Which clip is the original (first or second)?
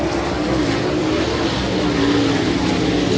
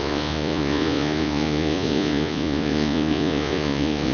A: first